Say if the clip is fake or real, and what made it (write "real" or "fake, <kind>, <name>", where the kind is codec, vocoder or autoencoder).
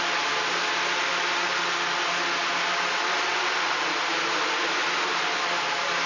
real